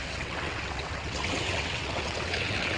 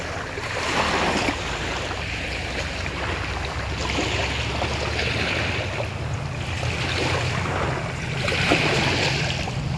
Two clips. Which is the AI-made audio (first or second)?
first